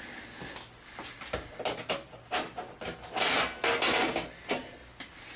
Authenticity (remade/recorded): recorded